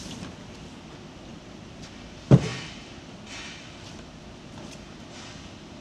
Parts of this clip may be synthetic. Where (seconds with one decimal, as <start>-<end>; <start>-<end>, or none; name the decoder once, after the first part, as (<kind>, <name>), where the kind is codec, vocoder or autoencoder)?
0.0-5.8 (vocoder, BigVGAN v2)